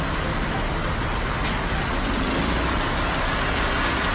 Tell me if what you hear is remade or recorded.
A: recorded